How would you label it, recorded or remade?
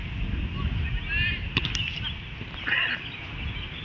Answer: recorded